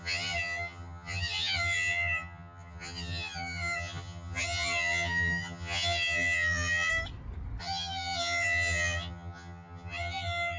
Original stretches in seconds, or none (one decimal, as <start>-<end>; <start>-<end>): 6.9-7.6